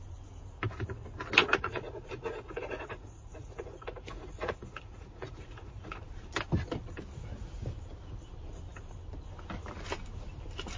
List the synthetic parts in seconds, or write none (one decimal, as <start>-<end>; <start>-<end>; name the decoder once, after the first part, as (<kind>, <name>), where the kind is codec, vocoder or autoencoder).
1.4-6.0 (vocoder, Vocos)